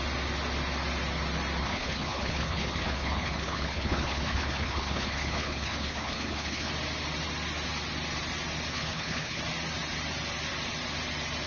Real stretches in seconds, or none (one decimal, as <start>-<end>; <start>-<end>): 0.0-1.6; 6.7-8.7; 9.4-11.5